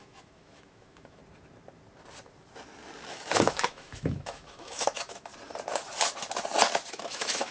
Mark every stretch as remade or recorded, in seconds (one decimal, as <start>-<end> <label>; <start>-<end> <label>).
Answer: 0.0-1.2 remade; 1.2-3.1 recorded; 3.1-5.3 remade; 5.3-6.9 recorded; 6.9-7.5 remade